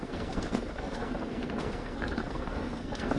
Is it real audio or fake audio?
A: fake